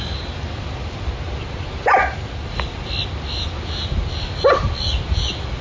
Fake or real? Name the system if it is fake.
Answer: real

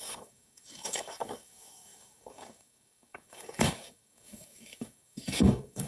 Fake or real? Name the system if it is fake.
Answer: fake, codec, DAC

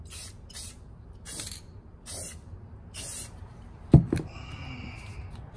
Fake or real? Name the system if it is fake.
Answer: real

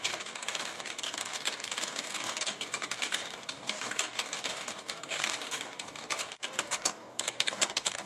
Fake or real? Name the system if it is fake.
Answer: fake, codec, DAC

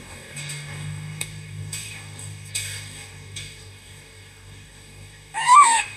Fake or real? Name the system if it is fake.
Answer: fake, codec, DAC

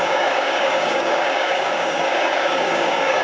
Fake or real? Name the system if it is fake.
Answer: fake, codec, DAC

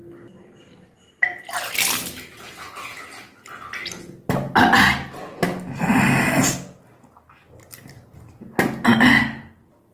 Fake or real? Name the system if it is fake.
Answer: real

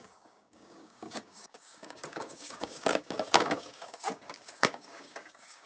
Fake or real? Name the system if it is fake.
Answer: fake, codec, DAC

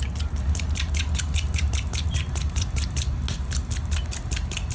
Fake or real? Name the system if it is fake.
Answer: real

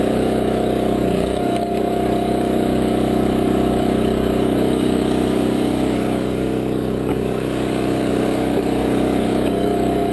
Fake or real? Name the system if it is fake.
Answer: fake, codec, DAC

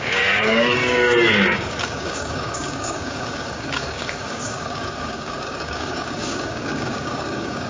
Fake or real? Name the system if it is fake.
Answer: fake, codec, DAC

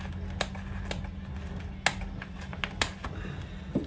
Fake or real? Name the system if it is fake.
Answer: real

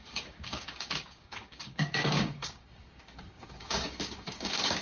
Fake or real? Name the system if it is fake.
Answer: fake, codec, DAC